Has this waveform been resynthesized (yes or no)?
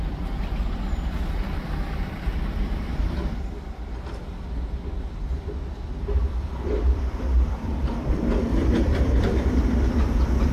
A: yes